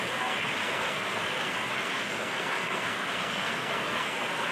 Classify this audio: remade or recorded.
remade